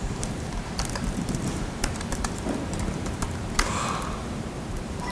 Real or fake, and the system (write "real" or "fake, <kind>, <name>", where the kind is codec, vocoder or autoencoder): fake, vocoder, BigVGAN v2